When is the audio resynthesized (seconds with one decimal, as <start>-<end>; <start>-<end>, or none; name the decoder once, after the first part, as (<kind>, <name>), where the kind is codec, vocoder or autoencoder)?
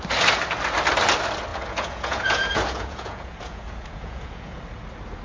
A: 1.5-4.6 (vocoder, Vocos)